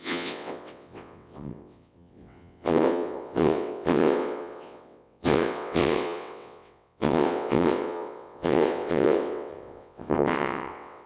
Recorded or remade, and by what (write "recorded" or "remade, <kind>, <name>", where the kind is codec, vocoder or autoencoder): remade, vocoder, WaveNeXt